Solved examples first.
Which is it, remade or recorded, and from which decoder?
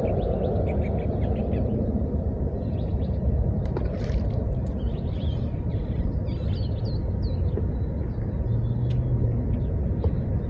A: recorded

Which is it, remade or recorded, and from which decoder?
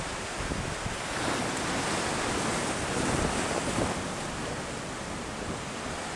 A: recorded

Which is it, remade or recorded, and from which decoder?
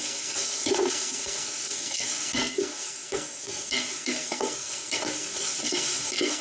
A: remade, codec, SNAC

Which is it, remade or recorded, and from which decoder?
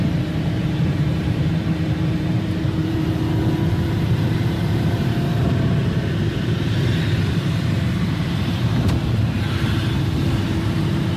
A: remade, vocoder, BigVGAN v2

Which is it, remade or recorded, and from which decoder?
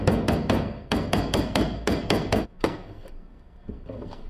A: remade, codec, SNAC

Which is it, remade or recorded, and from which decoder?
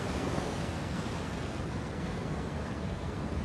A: remade, codec, SNAC